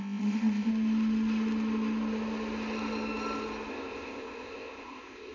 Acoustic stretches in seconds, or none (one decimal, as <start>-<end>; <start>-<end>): 0.7-3.7